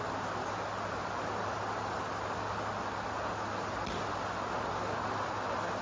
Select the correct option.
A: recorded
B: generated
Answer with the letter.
A